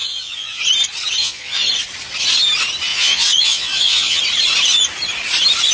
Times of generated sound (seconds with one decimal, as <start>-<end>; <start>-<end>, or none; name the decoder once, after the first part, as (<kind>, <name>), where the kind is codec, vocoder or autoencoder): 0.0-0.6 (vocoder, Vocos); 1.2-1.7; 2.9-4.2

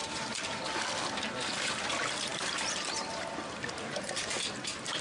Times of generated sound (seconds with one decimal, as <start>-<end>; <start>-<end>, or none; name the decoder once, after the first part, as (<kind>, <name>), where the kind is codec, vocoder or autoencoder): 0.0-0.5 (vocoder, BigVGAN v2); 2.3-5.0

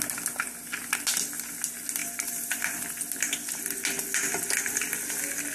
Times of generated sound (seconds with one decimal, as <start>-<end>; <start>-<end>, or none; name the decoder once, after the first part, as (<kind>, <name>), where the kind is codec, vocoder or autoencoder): 2.0-3.6 (vocoder, BigVGAN v2)